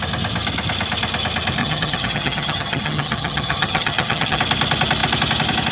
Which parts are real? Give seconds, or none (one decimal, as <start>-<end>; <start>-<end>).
0.0-1.6; 4.4-5.7

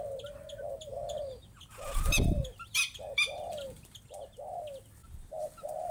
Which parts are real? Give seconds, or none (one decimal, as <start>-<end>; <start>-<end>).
0.0-0.9; 4.4-5.0

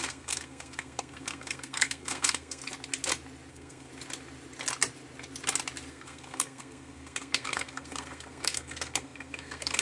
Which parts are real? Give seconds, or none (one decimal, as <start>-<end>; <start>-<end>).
2.6-3.5; 3.9-5.9